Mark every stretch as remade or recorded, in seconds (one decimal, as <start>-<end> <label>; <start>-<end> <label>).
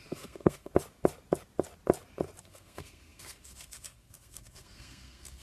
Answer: 0.0-0.7 remade; 0.7-2.4 recorded; 2.4-5.4 remade